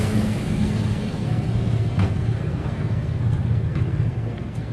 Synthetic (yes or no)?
yes